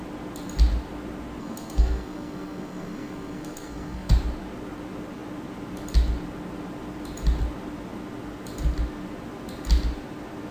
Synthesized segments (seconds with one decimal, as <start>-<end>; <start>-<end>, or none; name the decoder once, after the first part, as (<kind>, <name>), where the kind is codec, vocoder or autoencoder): 1.4-4.1 (codec, SNAC)